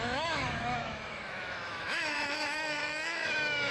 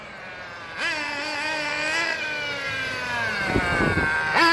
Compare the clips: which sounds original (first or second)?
second